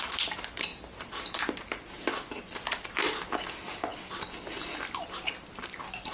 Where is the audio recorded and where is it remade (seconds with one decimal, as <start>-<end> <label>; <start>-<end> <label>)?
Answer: 0.0-6.1 recorded